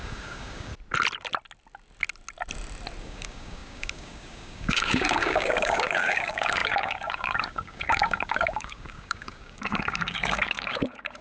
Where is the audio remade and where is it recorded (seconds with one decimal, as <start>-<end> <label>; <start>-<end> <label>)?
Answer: 0.0-0.7 remade; 0.7-3.0 recorded; 3.0-11.2 remade